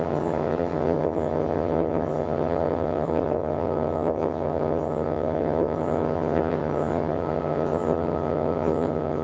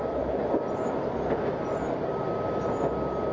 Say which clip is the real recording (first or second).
second